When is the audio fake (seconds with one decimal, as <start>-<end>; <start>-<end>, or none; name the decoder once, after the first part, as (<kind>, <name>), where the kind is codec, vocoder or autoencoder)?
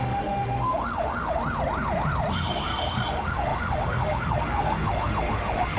0.0-1.4 (autoencoder, DAC-VAE); 2.3-5.8